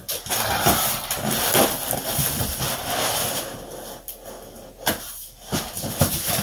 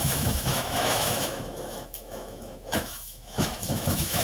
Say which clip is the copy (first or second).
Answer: second